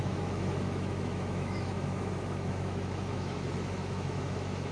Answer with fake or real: fake